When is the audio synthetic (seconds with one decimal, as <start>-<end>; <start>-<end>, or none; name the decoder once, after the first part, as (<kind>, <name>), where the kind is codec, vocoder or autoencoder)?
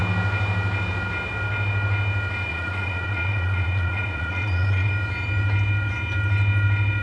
2.5-4.9 (vocoder, Vocos)